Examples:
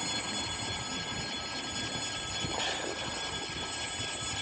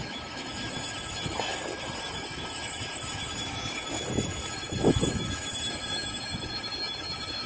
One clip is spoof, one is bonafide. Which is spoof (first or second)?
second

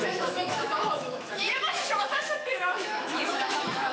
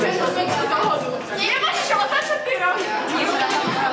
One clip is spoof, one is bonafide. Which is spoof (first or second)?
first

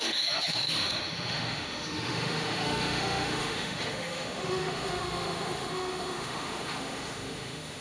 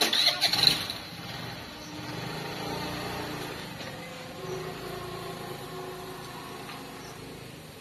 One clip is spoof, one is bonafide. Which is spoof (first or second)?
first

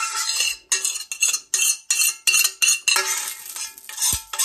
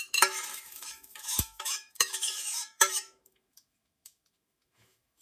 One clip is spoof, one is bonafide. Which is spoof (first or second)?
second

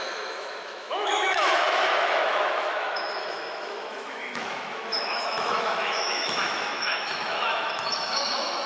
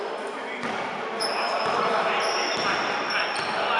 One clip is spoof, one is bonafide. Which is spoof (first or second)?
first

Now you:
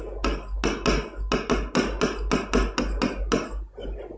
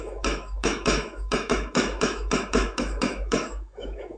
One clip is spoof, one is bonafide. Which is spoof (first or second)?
second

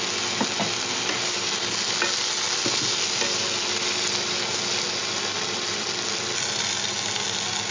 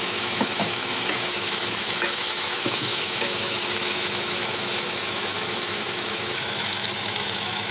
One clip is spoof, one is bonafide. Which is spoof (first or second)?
second